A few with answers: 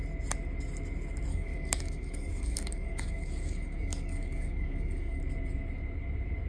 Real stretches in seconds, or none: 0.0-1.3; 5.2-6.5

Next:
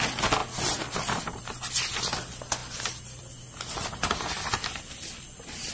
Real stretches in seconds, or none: 0.0-5.7

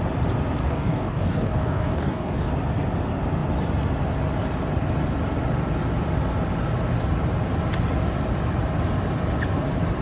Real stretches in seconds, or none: 0.0-0.6; 2.5-10.0

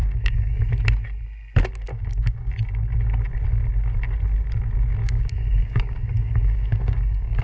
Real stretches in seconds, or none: 0.7-1.9; 2.5-5.0